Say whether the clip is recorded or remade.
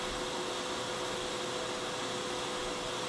recorded